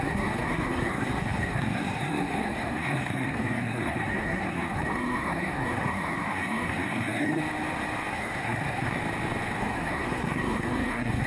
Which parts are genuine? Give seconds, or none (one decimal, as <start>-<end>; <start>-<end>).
7.4-8.1; 9.0-9.6